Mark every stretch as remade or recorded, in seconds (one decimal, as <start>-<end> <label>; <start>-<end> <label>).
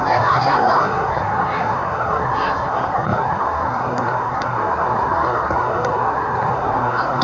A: 0.0-7.2 remade